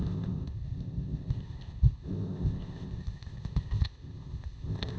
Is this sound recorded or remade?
remade